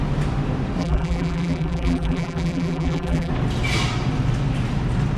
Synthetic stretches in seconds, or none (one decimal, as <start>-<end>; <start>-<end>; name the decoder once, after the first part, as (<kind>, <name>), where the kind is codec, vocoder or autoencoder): 0.8-3.3 (vocoder, BigVGAN v2)